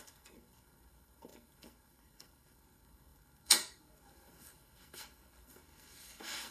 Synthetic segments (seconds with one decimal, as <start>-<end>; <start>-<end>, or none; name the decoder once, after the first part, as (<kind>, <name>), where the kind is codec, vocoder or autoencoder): 0.0-6.5 (codec, SNAC)